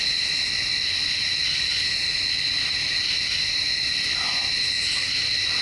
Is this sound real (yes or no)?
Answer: yes